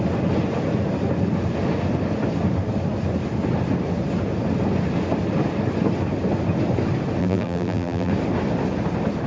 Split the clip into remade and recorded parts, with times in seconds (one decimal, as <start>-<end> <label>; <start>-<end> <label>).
0.0-7.2 recorded; 7.2-8.1 remade; 8.1-9.3 recorded